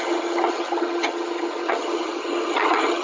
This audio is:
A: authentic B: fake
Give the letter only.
B